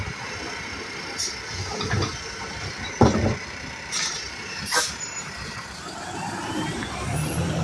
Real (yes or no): no